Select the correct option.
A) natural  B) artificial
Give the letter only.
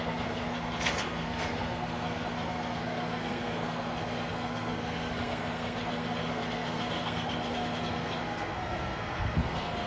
B